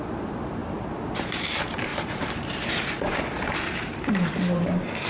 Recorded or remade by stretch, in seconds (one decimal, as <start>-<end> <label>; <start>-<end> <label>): 0.0-0.6 remade; 0.6-1.2 recorded; 1.2-1.9 remade; 1.9-2.7 recorded; 2.7-5.1 remade